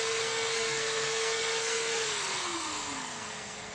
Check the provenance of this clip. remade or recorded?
remade